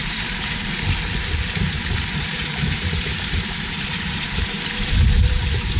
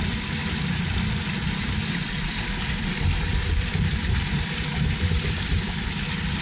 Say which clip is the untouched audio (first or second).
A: second